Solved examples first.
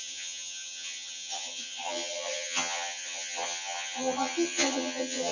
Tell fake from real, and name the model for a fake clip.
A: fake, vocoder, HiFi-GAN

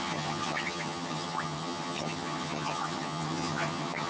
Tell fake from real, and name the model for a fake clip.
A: fake, vocoder, HiFi-GAN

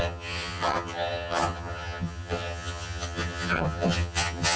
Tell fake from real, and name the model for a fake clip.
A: fake, vocoder, HiFi-GAN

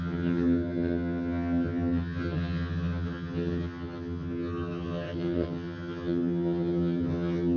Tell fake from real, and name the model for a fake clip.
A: fake, vocoder, HiFi-GAN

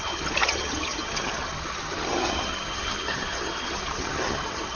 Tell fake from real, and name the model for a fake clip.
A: fake, vocoder, HiFi-GAN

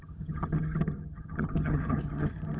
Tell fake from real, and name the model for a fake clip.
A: fake, vocoder, HiFi-GAN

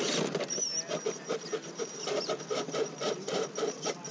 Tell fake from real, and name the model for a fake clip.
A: real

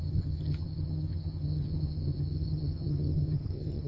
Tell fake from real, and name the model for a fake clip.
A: fake, vocoder, HiFi-GAN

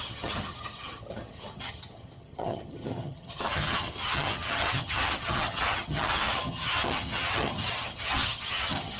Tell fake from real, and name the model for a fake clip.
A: fake, vocoder, HiFi-GAN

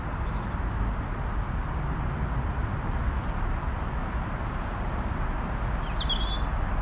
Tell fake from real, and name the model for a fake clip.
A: real